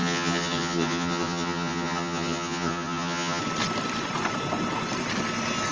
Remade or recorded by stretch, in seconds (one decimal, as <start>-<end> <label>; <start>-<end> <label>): 0.0-3.4 remade; 3.4-5.7 recorded